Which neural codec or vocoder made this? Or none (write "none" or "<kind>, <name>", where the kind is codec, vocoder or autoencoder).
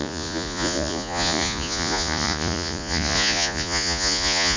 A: vocoder, Vocos